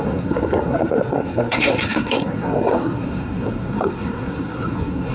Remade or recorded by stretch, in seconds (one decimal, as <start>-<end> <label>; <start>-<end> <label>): 0.0-5.1 remade